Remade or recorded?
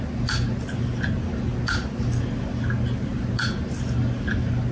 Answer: recorded